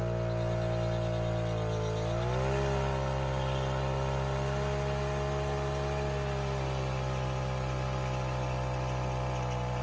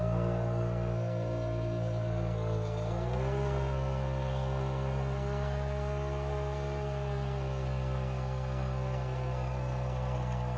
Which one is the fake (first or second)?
second